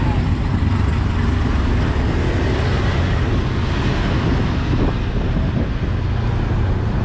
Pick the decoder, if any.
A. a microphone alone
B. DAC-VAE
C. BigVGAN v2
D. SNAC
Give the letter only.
A